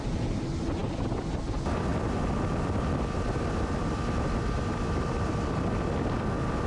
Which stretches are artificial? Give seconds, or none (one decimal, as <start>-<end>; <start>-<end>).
0.8-1.4; 1.9-5.9